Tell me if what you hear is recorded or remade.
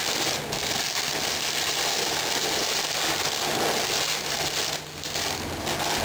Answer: recorded